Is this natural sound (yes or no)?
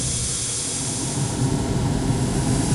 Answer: yes